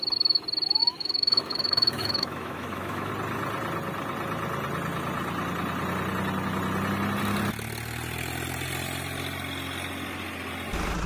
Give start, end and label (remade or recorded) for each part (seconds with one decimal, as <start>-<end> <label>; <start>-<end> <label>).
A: 0.0-0.8 recorded; 0.8-3.1 remade; 3.1-11.1 recorded